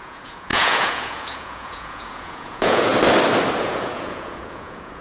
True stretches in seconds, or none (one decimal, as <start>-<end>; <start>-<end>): 2.9-3.6